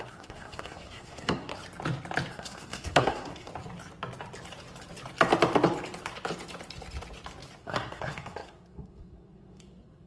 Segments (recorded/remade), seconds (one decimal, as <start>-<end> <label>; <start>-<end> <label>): 0.0-1.5 remade; 1.5-2.3 recorded; 2.3-3.5 remade; 3.5-7.6 recorded; 7.6-10.1 remade